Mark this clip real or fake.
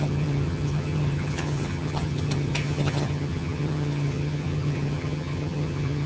fake